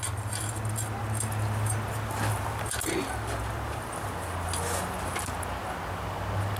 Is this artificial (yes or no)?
no